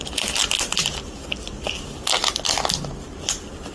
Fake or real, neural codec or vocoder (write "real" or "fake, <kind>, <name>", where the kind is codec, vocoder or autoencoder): real